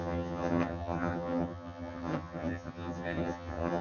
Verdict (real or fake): fake